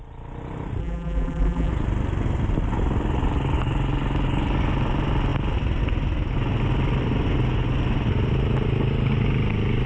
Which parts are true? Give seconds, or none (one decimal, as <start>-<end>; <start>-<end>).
0.0-0.8; 1.7-9.9